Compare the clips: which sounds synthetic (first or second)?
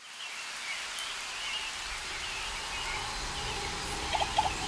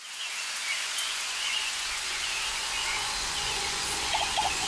second